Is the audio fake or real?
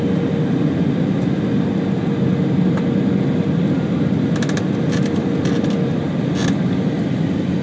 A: real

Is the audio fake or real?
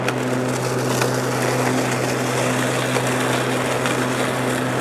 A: real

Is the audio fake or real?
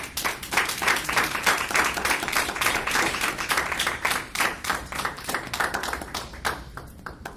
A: fake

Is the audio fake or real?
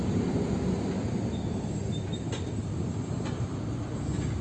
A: real